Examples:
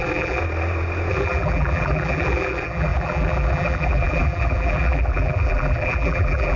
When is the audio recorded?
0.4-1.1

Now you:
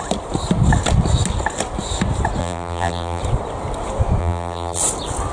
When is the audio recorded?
0.0-2.4; 3.2-4.2; 4.8-5.3

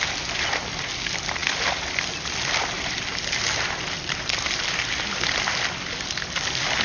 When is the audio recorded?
0.0-6.8

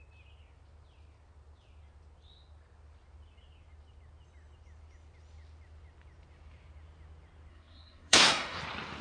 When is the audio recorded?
0.0-7.5; 8.6-9.0

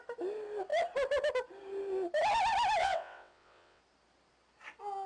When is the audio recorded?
0.0-2.8; 3.8-5.1

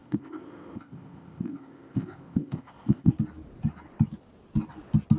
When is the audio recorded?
3.1-5.2

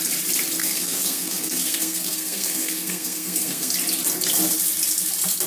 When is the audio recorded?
0.0-0.6; 3.7-5.5